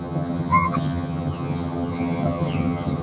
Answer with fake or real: fake